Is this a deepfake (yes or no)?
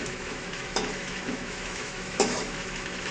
yes